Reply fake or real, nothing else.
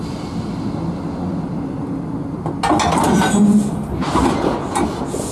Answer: real